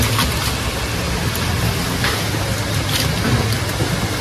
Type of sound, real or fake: real